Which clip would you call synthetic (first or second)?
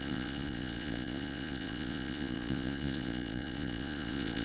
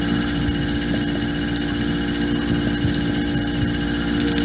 first